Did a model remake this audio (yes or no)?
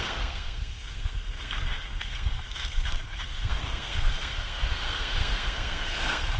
yes